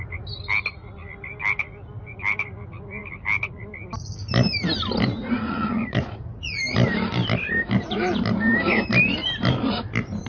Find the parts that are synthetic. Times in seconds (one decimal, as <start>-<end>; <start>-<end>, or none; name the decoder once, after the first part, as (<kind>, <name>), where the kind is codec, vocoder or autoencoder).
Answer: 5.2-6.6 (vocoder, Vocos)